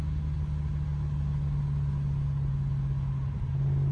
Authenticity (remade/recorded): recorded